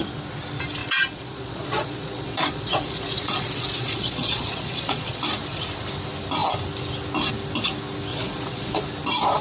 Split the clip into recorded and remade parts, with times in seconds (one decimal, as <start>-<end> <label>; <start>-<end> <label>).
0.0-0.8 recorded; 0.8-5.2 remade; 5.2-8.1 recorded; 8.1-8.8 remade; 8.8-9.4 recorded

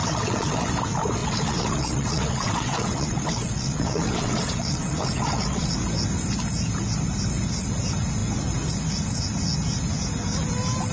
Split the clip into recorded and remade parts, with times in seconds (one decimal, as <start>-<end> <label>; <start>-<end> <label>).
0.0-0.7 remade; 0.7-1.2 recorded; 1.2-5.7 remade; 5.7-10.9 recorded

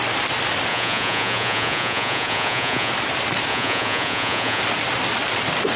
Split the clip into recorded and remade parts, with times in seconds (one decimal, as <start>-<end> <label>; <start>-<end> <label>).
0.0-0.7 recorded; 0.7-2.9 remade; 2.9-3.5 recorded; 3.5-4.6 remade; 4.6-5.8 recorded

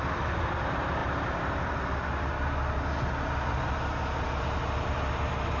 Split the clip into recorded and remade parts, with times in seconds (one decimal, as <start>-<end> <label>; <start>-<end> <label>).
0.0-5.6 recorded

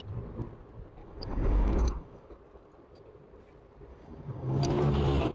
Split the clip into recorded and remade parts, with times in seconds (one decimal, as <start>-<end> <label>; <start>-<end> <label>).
0.0-1.0 recorded; 1.0-2.3 remade; 2.3-3.9 recorded; 3.9-4.6 remade; 4.6-5.3 recorded

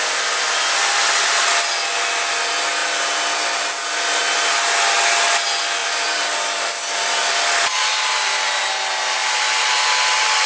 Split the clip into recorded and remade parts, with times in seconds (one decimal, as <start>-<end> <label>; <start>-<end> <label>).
0.0-5.8 recorded; 5.8-8.6 remade; 8.6-9.2 recorded; 9.2-9.9 remade; 9.9-10.5 recorded

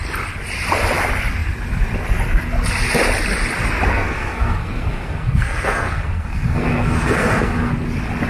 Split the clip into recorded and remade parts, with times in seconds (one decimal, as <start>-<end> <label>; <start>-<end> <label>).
0.0-3.9 recorded; 3.9-7.7 remade; 7.7-8.3 recorded